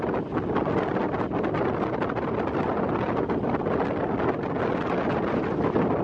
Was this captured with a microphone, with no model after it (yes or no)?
yes